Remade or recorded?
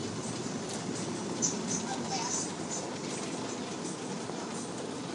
recorded